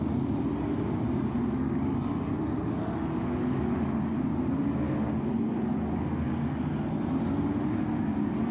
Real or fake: real